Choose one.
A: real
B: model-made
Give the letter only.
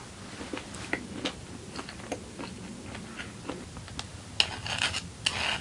A